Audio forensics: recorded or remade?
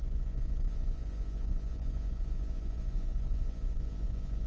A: remade